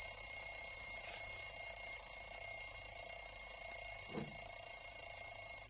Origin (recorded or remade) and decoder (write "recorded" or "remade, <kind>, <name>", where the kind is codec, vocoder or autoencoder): remade, vocoder, BigVGAN v2